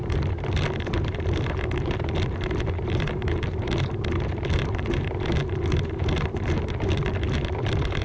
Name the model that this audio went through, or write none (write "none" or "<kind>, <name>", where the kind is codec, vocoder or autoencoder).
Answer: vocoder, BigVGAN v2